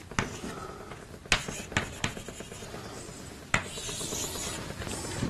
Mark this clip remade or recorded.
recorded